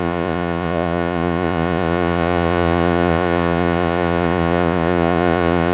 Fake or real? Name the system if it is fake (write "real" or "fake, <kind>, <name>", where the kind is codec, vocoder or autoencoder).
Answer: fake, vocoder, Vocos